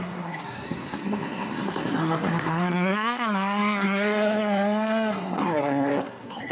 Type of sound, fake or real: fake